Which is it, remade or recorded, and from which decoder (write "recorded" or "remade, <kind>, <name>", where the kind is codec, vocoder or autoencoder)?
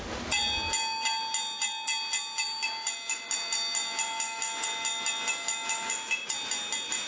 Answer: recorded